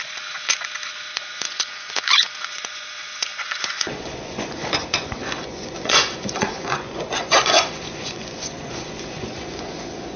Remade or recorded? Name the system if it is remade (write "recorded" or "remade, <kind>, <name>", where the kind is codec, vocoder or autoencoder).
remade, vocoder, Vocos